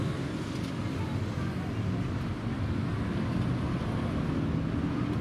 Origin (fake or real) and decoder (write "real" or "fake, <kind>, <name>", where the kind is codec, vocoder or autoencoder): real